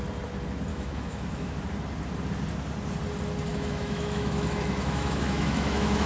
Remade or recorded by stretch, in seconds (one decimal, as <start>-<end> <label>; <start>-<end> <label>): 0.0-0.7 recorded; 0.7-1.6 remade; 1.6-3.5 recorded; 3.5-6.1 remade